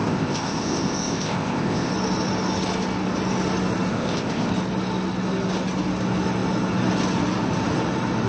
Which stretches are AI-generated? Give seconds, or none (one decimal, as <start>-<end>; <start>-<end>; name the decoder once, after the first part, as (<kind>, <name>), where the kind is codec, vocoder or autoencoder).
0.0-1.9 (codec, ZipCodec); 3.9-4.5